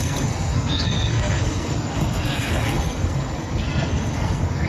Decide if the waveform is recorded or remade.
remade